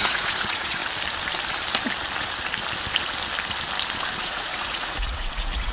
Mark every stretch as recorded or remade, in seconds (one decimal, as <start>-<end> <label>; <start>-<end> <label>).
0.0-0.8 remade; 0.8-4.2 recorded; 4.2-5.7 remade